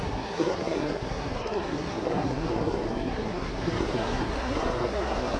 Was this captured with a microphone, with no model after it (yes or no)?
no